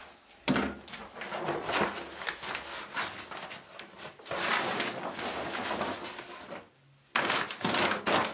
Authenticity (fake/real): real